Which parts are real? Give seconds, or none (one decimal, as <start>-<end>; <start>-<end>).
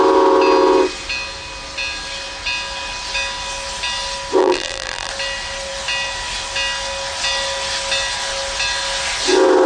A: 0.0-4.4; 5.1-9.7